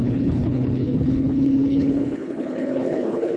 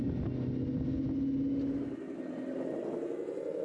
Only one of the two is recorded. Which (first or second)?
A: second